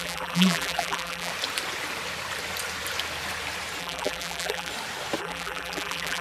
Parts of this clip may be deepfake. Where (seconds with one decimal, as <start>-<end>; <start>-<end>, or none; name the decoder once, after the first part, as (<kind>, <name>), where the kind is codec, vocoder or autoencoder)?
0.0-1.3 (vocoder, BigVGAN v2); 3.8-4.7; 5.2-6.2